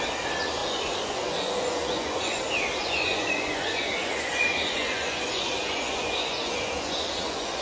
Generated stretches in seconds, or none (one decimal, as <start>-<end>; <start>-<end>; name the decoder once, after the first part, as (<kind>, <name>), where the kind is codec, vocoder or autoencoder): 0.6-2.4 (vocoder, Vocos); 2.8-7.6